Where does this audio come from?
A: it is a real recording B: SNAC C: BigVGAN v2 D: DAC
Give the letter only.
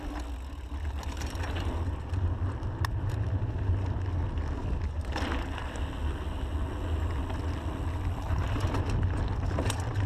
A